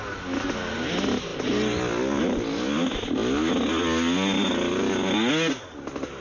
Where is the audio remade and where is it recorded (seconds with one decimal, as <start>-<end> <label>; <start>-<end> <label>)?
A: 0.0-6.2 recorded